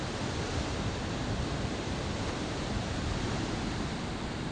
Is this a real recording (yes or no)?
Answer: yes